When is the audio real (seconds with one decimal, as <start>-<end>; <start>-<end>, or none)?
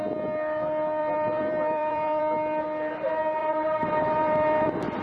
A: 0.0-1.0; 2.2-3.4